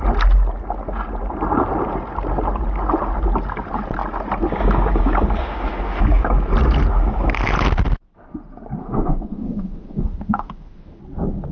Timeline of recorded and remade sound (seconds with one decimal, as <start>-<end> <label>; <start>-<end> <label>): 0.0-5.4 recorded; 5.4-6.0 remade; 6.0-8.8 recorded; 8.8-11.0 remade; 11.0-11.5 recorded